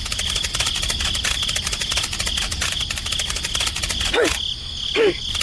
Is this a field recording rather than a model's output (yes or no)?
yes